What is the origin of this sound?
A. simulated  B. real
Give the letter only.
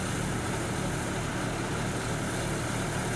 B